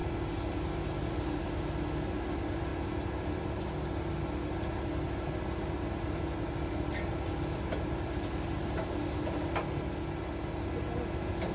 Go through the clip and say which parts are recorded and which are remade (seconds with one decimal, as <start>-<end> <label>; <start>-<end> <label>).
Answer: 0.0-11.5 recorded